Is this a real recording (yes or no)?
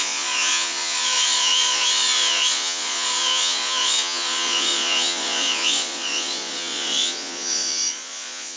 no